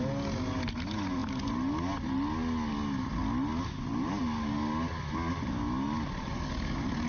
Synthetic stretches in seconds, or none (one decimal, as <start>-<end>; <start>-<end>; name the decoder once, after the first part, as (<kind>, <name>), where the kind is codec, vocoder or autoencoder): none